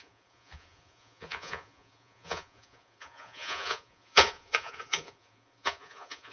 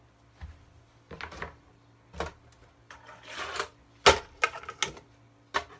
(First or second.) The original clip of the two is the second